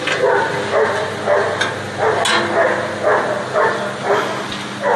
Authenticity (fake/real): real